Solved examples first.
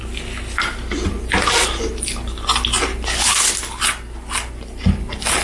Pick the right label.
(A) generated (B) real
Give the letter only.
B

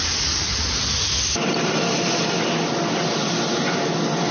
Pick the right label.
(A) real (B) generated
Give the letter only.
A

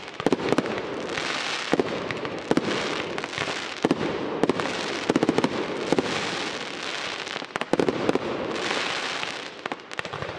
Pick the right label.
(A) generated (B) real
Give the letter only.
B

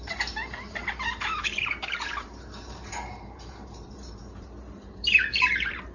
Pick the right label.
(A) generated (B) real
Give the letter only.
A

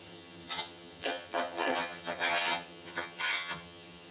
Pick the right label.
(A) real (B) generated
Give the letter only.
B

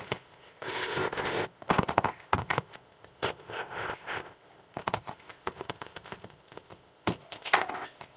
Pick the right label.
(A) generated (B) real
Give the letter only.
A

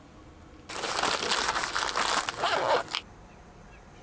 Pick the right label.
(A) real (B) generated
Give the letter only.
A